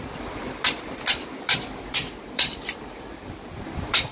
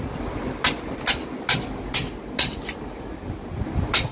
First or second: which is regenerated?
first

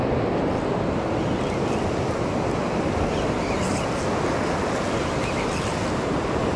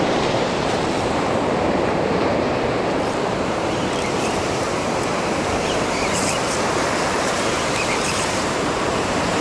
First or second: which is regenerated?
second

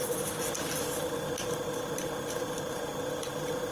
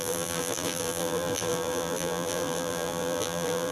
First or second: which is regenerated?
second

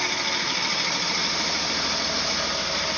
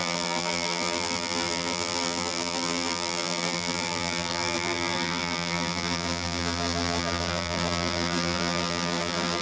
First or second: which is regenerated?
second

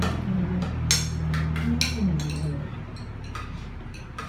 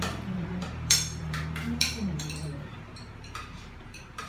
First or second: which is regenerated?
second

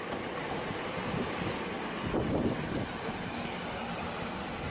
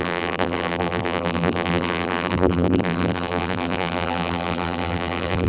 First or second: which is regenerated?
second